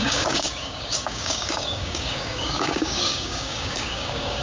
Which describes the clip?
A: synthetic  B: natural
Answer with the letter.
A